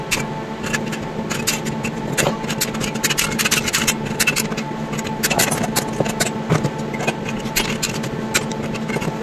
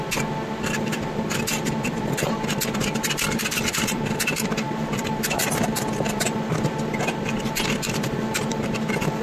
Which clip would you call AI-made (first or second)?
second